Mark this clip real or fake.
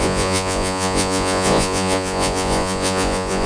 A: fake